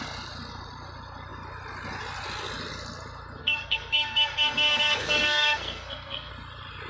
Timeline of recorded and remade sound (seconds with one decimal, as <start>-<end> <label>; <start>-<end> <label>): 0.0-3.4 recorded; 3.4-6.3 remade; 6.3-6.9 recorded